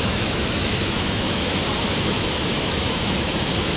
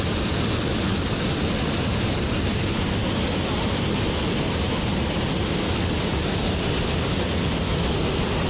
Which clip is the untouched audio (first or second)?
second